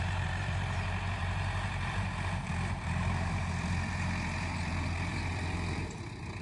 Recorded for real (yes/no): no